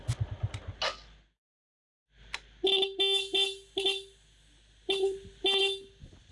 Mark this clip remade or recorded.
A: recorded